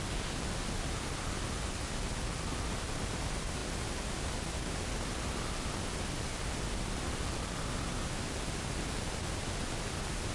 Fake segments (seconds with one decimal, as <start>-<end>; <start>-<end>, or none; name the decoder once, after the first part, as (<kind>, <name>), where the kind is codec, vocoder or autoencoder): none